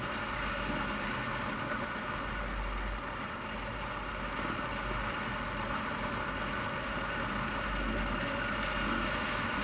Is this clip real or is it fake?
real